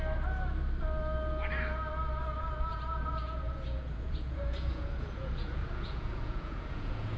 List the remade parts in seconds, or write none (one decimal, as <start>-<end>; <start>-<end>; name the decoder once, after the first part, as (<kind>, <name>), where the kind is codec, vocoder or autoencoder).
2.7-7.2 (vocoder, Vocos)

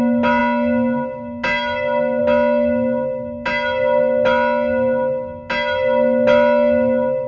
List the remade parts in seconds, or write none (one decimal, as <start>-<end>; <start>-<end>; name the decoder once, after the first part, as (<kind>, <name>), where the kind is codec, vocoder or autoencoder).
none

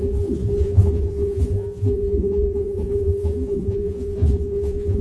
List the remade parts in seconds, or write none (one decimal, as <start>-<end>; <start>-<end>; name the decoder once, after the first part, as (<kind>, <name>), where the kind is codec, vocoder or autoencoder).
0.0-5.0 (vocoder, Vocos)

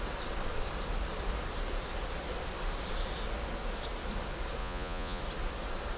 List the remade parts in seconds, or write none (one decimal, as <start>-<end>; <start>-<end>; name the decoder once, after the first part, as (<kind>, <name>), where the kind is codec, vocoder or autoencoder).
4.6-5.2 (vocoder, Vocos)

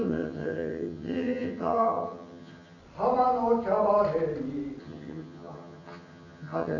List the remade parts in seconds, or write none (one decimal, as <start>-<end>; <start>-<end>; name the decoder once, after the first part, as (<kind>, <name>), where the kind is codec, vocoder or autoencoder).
0.0-2.8 (vocoder, HiFi-GAN); 4.8-6.8

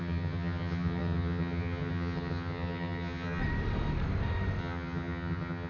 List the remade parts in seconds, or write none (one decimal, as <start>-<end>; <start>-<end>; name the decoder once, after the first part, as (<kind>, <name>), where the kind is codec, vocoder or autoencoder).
0.0-3.4 (vocoder, HiFi-GAN); 4.6-5.7